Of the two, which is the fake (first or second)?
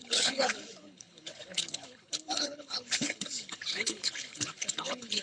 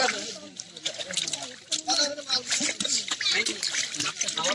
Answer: first